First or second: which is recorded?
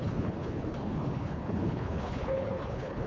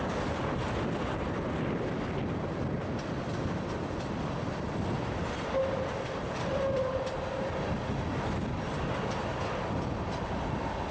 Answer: second